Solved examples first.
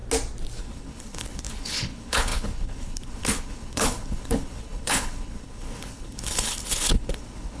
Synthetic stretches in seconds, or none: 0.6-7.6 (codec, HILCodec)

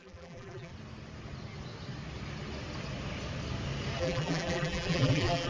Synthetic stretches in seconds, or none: 0.0-0.7 (vocoder, BigVGAN v2); 4.0-5.5